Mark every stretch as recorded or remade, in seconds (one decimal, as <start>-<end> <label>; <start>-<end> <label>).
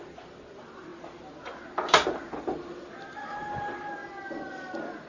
0.0-4.0 recorded; 4.0-4.5 remade; 4.5-5.1 recorded